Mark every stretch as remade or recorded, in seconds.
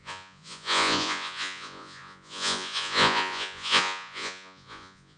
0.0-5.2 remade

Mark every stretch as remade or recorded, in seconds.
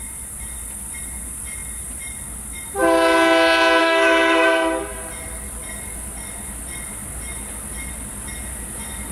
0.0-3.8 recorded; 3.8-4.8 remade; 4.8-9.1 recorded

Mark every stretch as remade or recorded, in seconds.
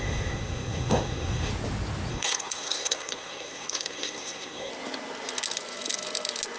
0.0-1.5 remade; 1.5-2.1 recorded; 2.1-4.7 remade; 4.7-6.6 recorded